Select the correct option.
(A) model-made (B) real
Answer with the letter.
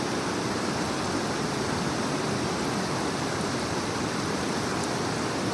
B